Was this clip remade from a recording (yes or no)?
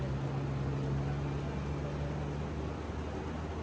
no